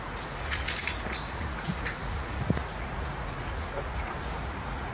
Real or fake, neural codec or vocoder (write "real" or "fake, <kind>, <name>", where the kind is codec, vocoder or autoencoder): fake, vocoder, Vocos